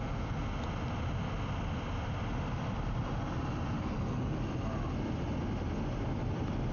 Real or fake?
real